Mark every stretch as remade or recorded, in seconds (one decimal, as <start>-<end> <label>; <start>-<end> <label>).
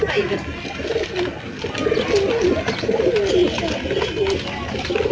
0.0-5.1 recorded